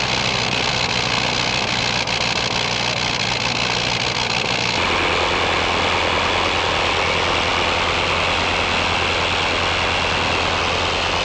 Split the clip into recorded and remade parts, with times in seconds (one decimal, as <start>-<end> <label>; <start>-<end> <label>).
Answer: 0.0-11.2 recorded